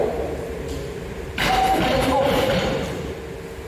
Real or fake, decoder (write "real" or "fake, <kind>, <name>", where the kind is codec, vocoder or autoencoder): real